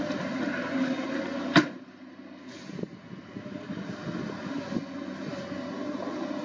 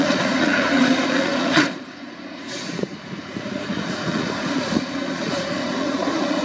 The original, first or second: first